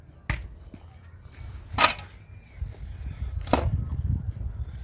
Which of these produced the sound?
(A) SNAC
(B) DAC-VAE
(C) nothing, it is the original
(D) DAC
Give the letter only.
C